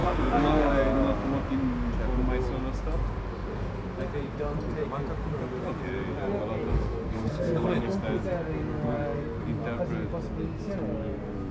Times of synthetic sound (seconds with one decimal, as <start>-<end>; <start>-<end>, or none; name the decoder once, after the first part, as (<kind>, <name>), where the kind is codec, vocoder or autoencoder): 0.0-0.7 (codec, SNAC); 6.7-8.0